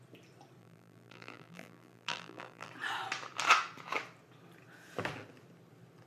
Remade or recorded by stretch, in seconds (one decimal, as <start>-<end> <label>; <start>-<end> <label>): 0.0-0.6 recorded; 0.6-2.7 remade; 2.7-6.1 recorded